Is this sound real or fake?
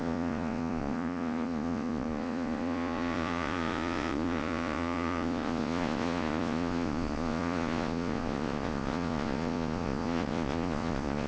fake